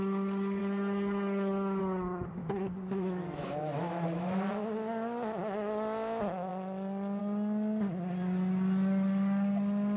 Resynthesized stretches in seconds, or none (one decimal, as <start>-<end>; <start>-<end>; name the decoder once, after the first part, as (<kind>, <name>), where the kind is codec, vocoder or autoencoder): 0.6-1.8 (autoencoder, DAC-VAE); 2.4-4.5